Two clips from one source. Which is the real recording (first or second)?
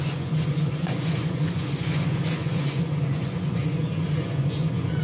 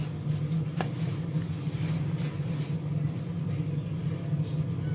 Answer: second